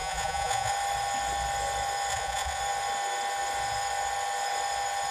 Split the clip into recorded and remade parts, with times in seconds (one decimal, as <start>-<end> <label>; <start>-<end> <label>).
0.0-0.7 remade; 0.7-2.1 recorded; 2.1-2.6 remade; 2.6-5.1 recorded